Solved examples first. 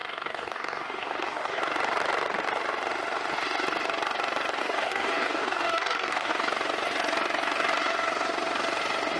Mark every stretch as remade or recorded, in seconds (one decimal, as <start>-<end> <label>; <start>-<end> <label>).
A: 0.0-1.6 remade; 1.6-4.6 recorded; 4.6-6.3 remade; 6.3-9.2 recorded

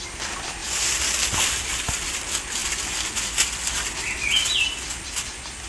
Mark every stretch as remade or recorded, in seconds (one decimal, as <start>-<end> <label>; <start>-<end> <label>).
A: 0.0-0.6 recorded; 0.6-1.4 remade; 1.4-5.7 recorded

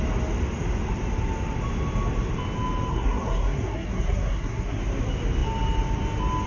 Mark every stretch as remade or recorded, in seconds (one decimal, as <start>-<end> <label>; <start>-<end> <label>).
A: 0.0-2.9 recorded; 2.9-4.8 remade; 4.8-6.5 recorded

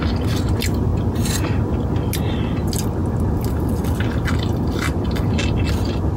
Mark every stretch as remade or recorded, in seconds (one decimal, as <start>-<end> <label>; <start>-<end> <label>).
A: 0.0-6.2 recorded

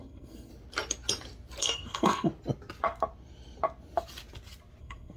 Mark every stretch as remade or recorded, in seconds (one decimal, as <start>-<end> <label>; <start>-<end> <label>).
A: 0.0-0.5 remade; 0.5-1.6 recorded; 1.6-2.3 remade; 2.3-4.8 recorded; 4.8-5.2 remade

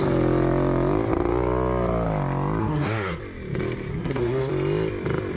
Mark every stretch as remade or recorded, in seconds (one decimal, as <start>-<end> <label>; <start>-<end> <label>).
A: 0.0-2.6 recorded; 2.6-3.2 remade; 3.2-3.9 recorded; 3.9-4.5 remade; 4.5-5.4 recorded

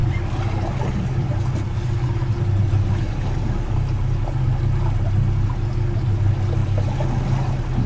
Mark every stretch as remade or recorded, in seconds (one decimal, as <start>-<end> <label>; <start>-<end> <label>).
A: 0.0-7.9 recorded